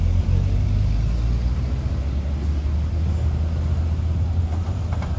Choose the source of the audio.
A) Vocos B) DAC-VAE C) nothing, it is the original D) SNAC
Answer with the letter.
C